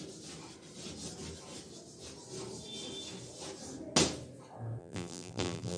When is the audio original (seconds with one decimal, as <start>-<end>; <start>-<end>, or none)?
0.0-4.8